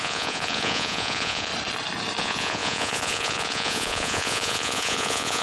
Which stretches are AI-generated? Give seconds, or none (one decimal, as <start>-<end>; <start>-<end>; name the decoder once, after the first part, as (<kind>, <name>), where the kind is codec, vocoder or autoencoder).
0.0-1.5 (vocoder, Vocos); 2.2-5.4